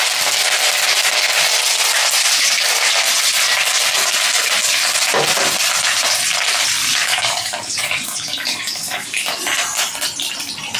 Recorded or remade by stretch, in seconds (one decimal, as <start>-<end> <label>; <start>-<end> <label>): 0.0-6.9 recorded; 6.9-9.4 remade; 9.4-10.8 recorded